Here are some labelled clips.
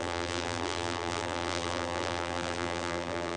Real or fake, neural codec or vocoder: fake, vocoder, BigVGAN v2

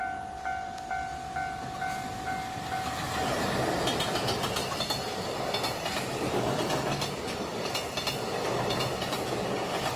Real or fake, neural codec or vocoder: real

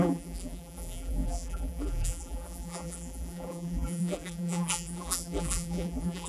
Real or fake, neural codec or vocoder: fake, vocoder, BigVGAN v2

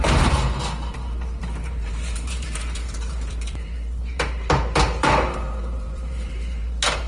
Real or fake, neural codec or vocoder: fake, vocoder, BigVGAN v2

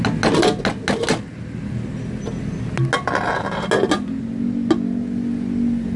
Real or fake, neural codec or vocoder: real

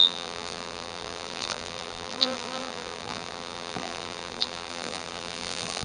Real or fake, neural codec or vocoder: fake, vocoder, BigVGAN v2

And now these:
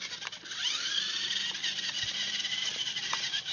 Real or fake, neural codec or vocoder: fake, vocoder, BigVGAN v2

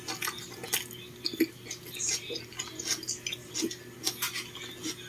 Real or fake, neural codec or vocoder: real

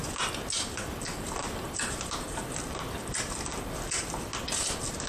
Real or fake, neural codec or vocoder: real